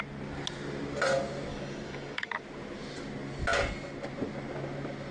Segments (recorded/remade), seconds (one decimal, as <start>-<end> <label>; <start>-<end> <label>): 0.0-1.5 recorded; 1.5-2.4 remade; 2.4-5.1 recorded